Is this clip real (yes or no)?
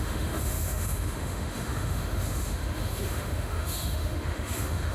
no